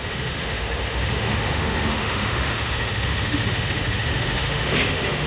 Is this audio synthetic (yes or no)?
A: yes